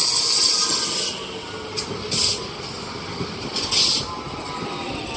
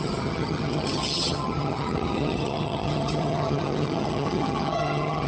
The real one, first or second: first